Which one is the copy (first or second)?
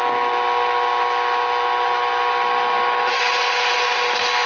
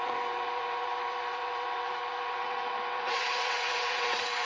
second